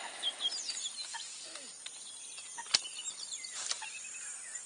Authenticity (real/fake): real